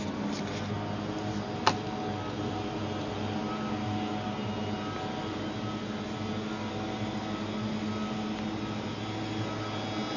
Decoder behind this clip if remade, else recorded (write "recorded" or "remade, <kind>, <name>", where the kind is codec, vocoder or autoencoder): recorded